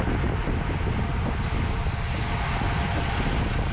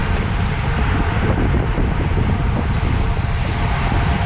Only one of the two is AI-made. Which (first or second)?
second